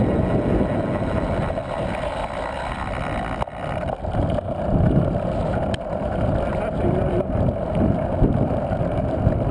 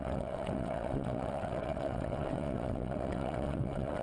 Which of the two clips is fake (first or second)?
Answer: second